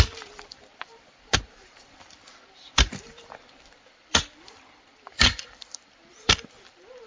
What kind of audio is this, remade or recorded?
remade